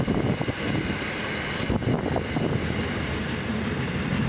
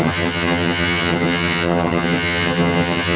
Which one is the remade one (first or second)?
second